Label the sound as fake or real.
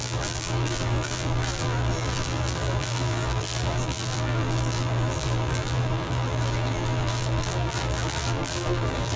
fake